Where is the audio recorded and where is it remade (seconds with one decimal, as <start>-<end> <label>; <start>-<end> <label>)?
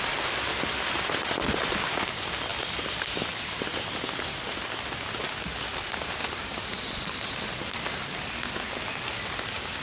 0.0-0.5 recorded; 0.5-1.2 remade; 1.2-2.5 recorded; 2.5-4.0 remade; 4.0-6.2 recorded; 6.2-6.9 remade; 6.9-9.8 recorded